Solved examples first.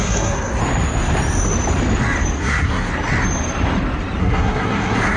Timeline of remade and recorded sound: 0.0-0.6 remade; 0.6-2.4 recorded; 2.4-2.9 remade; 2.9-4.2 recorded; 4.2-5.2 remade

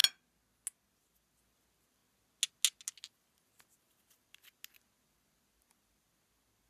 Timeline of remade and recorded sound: 0.0-6.7 recorded